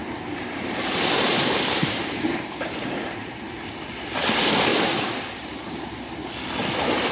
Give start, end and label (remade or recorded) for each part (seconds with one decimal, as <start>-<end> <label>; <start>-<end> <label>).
0.0-3.9 remade; 3.9-4.7 recorded; 4.7-5.8 remade; 5.8-7.1 recorded